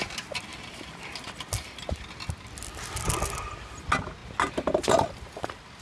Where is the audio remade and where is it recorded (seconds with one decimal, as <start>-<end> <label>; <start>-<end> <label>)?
0.0-5.8 recorded